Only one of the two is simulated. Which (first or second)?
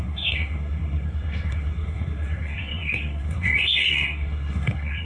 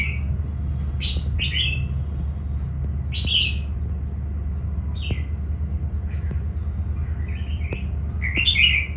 first